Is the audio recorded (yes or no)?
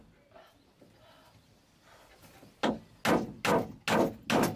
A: yes